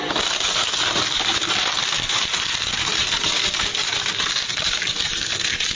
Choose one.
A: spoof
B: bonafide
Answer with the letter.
B